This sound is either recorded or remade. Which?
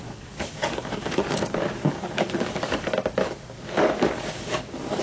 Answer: remade